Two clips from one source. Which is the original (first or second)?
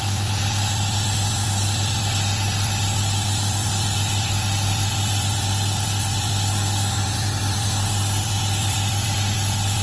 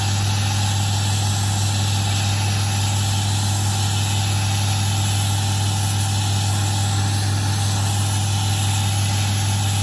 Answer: second